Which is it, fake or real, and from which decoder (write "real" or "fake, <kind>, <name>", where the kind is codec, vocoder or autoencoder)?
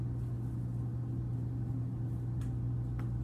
real